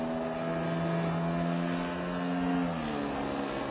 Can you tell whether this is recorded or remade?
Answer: recorded